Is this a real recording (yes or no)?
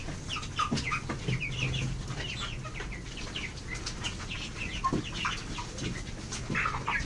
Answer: yes